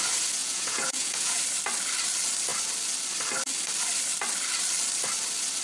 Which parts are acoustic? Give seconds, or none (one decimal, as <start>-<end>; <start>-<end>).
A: 0.0-0.4; 1.4-5.6

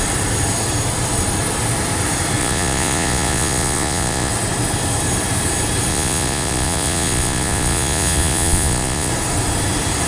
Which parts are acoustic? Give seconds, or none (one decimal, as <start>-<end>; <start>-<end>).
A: 0.0-2.4; 4.3-5.9; 9.1-10.1